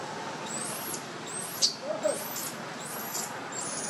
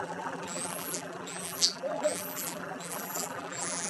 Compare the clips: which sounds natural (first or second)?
first